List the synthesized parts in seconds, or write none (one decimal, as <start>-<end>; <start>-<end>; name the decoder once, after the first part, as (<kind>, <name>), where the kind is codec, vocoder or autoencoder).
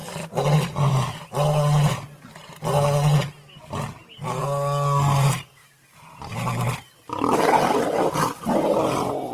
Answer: none